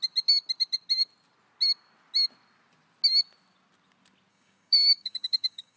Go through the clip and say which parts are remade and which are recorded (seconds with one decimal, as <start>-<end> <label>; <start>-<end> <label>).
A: 0.0-4.3 recorded; 4.3-5.8 remade